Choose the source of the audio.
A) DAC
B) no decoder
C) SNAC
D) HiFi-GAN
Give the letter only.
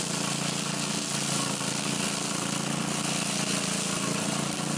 B